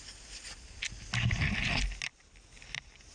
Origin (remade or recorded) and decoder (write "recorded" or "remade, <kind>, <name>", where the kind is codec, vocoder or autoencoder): recorded